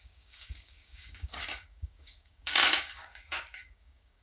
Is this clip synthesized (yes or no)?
yes